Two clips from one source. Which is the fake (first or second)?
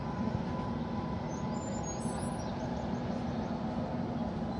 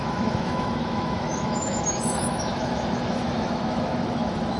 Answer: second